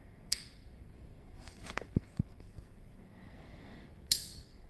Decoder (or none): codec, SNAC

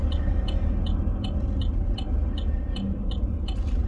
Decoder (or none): none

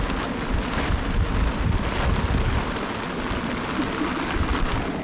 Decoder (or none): none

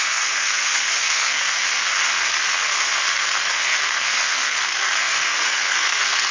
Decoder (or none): codec, SNAC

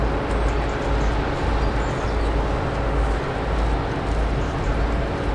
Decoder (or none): none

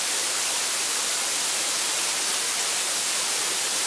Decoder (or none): none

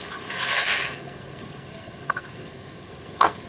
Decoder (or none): codec, SNAC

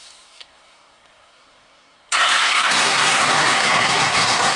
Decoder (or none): codec, SNAC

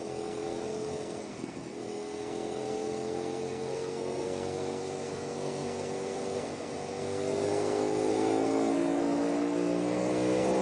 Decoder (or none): codec, SNAC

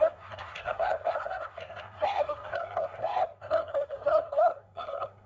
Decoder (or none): codec, SNAC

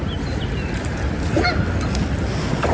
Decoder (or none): none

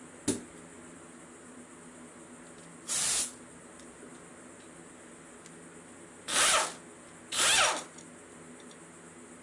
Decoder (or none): none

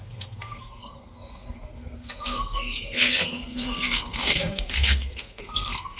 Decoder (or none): codec, SNAC